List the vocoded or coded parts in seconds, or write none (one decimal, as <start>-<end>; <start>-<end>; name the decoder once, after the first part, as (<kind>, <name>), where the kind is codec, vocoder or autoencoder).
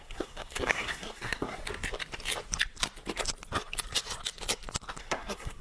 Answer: 0.0-1.6 (codec, SNAC); 5.0-5.6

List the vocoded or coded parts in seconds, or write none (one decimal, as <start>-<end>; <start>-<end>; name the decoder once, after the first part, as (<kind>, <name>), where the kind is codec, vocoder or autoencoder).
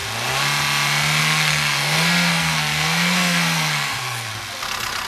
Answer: 1.2-4.3 (codec, SNAC)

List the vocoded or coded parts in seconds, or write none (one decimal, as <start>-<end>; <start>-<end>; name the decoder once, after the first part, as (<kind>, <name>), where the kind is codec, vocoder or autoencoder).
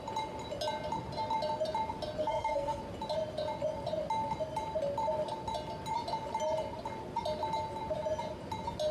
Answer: 2.2-2.8 (codec, SNAC)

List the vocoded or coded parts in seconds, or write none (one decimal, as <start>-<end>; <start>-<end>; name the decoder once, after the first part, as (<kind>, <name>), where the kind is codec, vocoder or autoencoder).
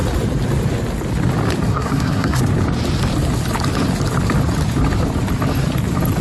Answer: 1.7-2.4 (codec, SNAC)